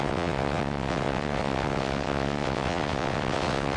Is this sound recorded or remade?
remade